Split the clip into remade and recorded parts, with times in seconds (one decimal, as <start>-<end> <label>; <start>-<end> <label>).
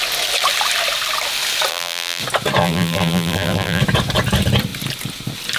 0.0-1.7 recorded; 1.7-2.2 remade; 2.2-2.6 recorded; 2.6-3.8 remade; 3.8-5.6 recorded